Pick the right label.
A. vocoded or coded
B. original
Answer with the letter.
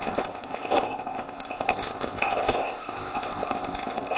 A